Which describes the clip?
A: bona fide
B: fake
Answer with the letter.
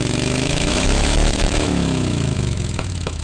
B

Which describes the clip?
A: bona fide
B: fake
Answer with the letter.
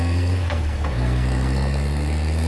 B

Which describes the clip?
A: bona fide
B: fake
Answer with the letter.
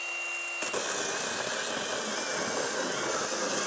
A